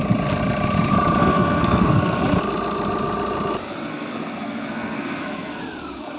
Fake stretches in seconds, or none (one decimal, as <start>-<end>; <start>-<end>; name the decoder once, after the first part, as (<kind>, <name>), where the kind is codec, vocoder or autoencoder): 1.2-2.2 (codec, SNAC); 3.9-5.6